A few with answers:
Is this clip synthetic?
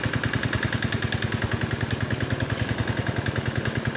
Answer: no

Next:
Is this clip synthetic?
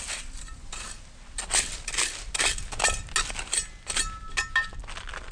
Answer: no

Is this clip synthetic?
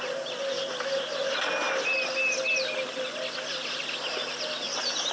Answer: no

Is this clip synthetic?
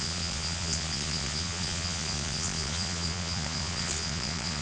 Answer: yes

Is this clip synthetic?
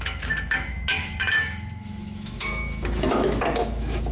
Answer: yes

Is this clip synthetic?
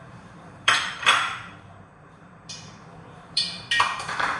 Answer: yes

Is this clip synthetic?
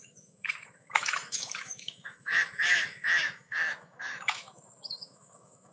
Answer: yes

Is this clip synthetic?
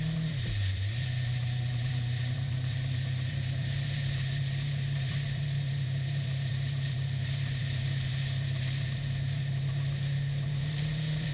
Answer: yes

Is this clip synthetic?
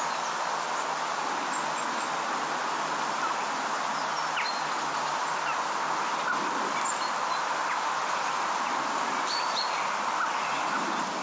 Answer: no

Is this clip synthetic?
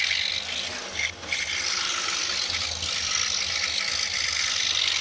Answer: no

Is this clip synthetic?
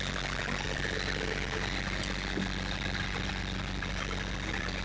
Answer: no